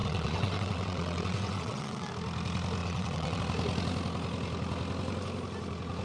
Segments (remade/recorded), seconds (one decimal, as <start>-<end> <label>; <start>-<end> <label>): 0.0-2.1 remade; 2.1-2.8 recorded; 2.8-3.4 remade; 3.4-6.0 recorded